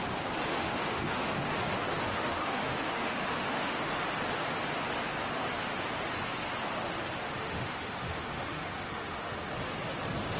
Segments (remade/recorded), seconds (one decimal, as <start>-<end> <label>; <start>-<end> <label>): 0.0-0.5 recorded; 0.5-1.5 remade; 1.5-2.1 recorded; 2.1-3.8 remade; 3.8-7.2 recorded; 7.2-9.5 remade; 9.5-10.4 recorded